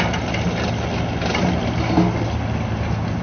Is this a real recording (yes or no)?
yes